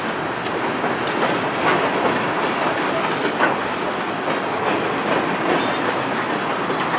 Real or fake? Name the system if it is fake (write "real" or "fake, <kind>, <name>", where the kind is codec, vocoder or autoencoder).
real